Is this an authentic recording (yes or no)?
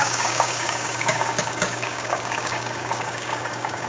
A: no